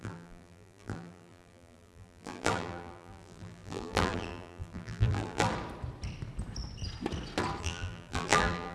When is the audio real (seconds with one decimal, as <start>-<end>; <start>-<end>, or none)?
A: 5.5-7.6